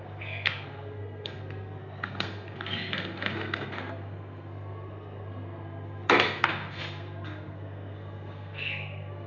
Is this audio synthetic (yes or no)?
yes